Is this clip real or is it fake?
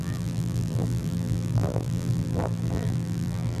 fake